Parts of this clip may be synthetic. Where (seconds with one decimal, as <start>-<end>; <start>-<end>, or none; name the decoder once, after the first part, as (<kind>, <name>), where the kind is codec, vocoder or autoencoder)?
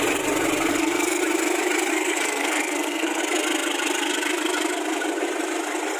0.7-1.2 (codec, SNAC); 1.9-3.2